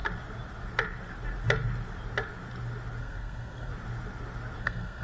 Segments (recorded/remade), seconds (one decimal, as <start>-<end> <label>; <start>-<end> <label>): 0.0-3.0 recorded; 3.0-3.7 remade; 3.7-4.6 recorded; 4.6-5.0 remade